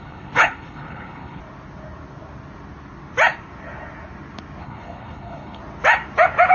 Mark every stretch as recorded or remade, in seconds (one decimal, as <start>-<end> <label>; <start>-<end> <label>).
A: 0.0-1.4 remade; 1.4-4.6 recorded; 4.6-5.6 remade; 5.6-6.5 recorded